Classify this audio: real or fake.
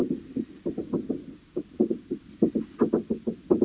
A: real